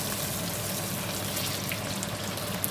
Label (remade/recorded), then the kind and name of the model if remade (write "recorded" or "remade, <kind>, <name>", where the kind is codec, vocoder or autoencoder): recorded